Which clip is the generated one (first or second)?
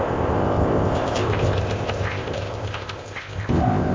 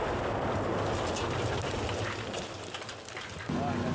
first